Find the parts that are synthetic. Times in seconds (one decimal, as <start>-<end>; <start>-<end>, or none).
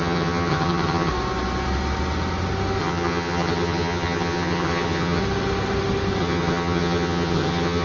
0.0-1.1; 2.8-5.2; 6.2-7.8